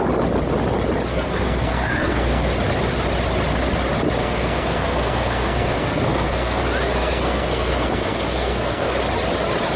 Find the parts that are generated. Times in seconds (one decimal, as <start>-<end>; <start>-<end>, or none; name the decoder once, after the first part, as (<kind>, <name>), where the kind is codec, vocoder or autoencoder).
1.1-2.5 (codec, SNAC); 4.2-6.6; 7.0-8.9